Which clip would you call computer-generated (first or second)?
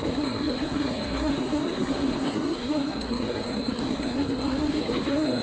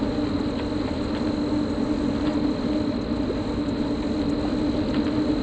first